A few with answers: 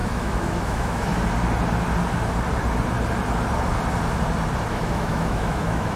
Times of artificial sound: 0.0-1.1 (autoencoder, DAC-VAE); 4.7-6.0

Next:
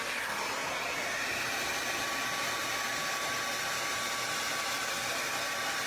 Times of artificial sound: none